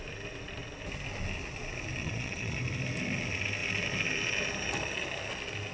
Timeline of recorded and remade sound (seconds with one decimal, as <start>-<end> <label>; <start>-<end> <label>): 0.0-2.0 recorded; 2.0-2.6 remade; 2.6-5.7 recorded